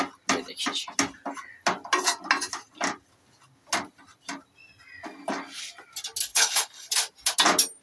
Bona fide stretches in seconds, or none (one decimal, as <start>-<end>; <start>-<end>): 0.0-6.3; 6.9-7.8